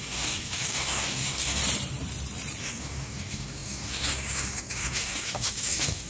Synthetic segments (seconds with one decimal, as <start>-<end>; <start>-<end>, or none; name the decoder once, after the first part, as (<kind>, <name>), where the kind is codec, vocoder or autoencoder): 0.0-1.6 (codec, DAC); 2.6-6.1